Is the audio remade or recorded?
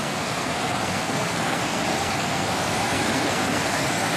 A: remade